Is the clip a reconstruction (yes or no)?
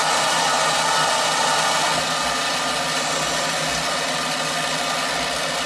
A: no